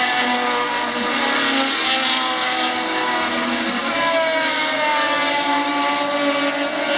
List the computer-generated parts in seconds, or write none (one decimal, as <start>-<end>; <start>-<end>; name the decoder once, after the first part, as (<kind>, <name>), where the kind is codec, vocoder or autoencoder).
3.0-5.7 (codec, DAC)